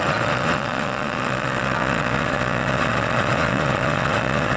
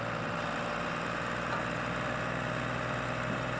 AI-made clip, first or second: first